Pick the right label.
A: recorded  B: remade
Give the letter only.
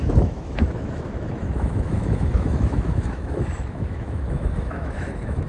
B